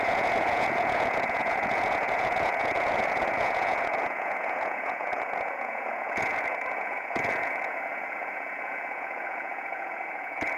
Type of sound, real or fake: fake